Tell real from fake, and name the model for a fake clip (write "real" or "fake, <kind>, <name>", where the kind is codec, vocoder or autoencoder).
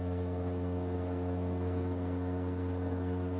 fake, codec, SNAC